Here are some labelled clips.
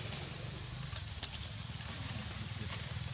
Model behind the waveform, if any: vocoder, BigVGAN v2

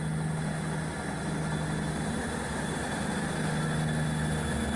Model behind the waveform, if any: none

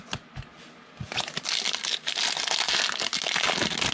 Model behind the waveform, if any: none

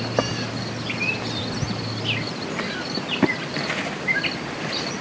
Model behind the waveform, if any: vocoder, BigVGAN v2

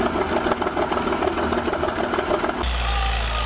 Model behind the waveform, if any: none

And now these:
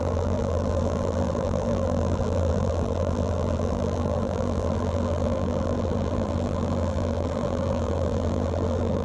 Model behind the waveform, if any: vocoder, BigVGAN v2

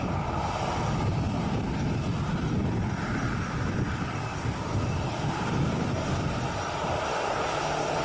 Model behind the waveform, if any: vocoder, BigVGAN v2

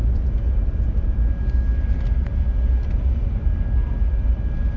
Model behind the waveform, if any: none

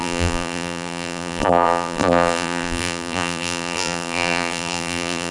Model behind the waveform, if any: vocoder, BigVGAN v2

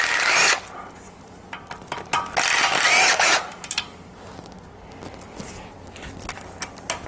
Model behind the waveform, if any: none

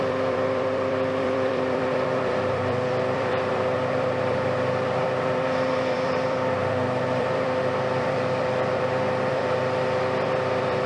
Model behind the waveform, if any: vocoder, BigVGAN v2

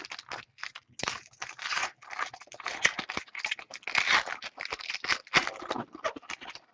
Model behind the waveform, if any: none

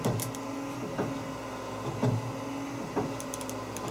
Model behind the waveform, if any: none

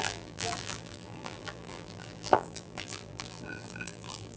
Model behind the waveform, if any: vocoder, BigVGAN v2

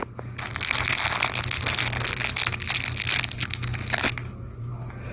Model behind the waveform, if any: none